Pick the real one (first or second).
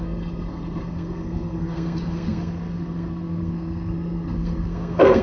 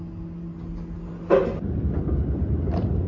second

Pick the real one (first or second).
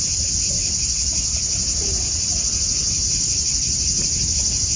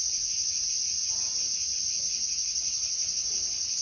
first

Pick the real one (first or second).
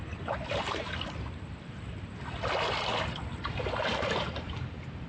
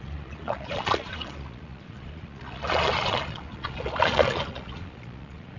first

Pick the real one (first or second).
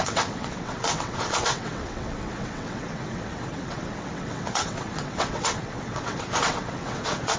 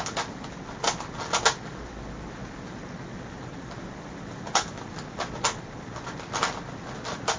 second